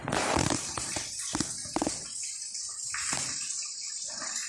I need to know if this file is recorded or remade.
remade